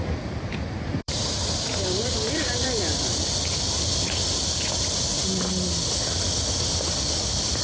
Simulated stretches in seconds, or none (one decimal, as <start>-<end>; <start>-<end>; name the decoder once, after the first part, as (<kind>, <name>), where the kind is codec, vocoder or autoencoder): 0.0-1.7 (vocoder, BigVGAN v2); 2.3-3.2; 6.6-7.6